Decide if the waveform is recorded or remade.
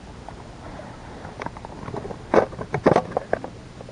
recorded